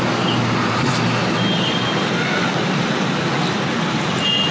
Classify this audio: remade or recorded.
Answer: recorded